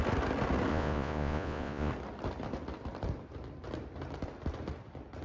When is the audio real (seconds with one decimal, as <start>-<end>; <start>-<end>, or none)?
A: 0.0-0.7; 1.9-5.2